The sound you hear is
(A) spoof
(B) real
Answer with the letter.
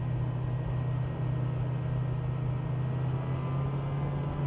B